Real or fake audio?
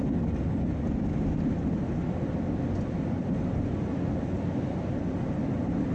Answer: real